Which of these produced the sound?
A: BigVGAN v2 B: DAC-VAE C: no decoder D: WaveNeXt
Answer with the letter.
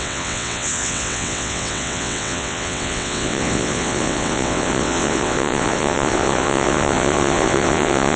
D